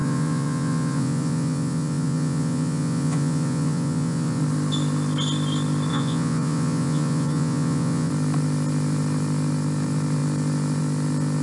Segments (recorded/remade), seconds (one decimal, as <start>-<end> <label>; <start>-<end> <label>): 0.0-4.4 remade; 4.4-5.9 recorded; 5.9-8.1 remade; 8.1-11.4 recorded